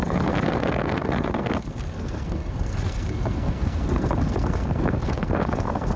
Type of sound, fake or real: fake